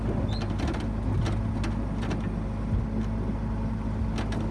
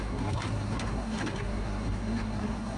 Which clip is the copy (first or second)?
second